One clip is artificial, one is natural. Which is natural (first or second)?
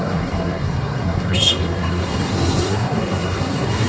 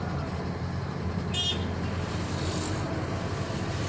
second